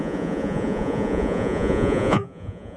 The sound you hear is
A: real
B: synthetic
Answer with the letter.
B